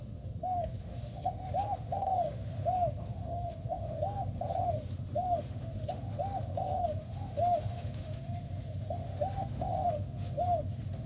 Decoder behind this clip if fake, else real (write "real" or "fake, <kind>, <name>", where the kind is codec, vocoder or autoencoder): fake, autoencoder, DAC-VAE